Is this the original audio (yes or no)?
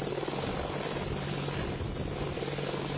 yes